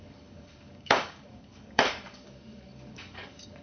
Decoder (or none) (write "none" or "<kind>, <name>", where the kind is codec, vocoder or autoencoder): codec, DAC